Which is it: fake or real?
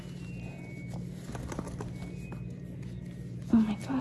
real